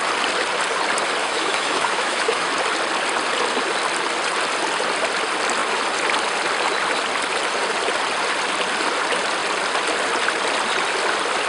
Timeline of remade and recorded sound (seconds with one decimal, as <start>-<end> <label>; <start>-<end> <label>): 0.0-1.2 recorded; 1.2-2.5 remade; 2.5-11.5 recorded